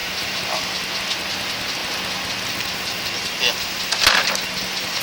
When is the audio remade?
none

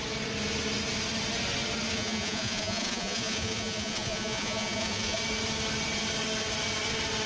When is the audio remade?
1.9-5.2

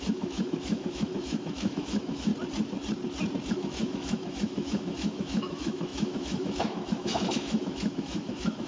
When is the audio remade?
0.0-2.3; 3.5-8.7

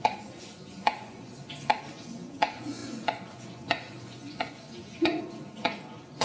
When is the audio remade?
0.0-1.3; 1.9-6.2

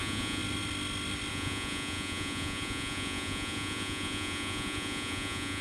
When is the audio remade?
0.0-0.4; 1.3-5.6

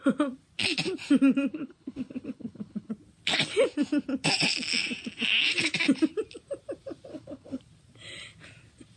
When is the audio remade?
1.5-2.9; 7.1-7.6

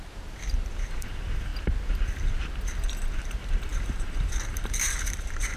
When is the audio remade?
0.0-1.5; 3.2-5.6